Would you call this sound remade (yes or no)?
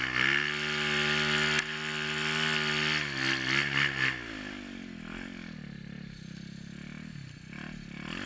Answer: no